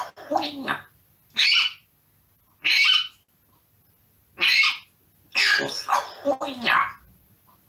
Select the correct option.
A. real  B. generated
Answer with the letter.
A